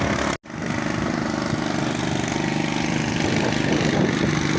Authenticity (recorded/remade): recorded